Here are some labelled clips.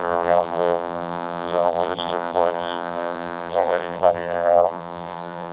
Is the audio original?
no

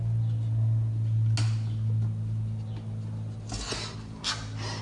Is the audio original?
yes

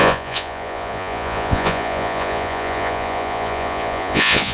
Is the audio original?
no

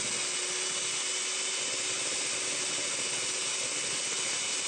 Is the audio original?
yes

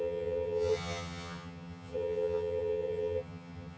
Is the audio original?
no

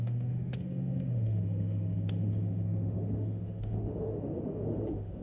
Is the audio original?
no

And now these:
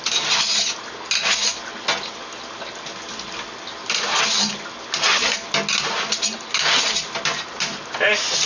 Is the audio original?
yes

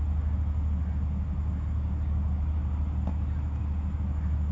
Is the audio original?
yes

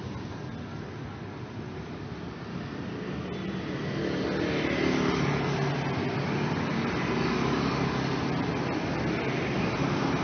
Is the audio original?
yes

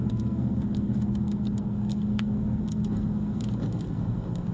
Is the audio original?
no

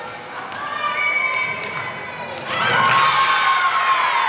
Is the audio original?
yes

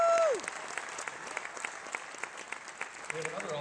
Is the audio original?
yes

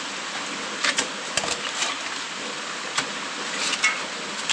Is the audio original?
yes